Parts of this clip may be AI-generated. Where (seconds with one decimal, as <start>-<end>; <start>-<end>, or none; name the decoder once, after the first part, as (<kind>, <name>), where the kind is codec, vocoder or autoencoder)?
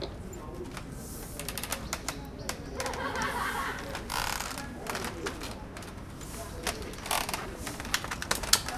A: none